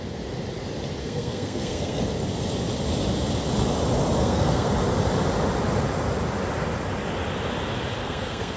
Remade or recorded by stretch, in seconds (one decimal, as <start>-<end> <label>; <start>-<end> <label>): 0.0-1.0 recorded; 1.0-2.0 remade; 2.0-4.2 recorded; 4.2-4.7 remade; 4.7-8.0 recorded; 8.0-8.6 remade